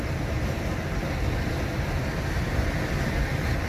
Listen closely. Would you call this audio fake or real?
real